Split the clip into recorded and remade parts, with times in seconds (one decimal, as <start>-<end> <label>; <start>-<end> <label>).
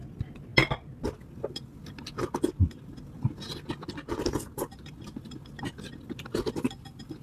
0.0-7.2 recorded